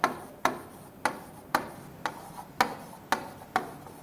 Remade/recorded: recorded